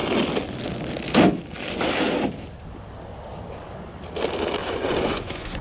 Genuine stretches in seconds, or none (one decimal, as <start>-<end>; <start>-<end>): 0.0-4.6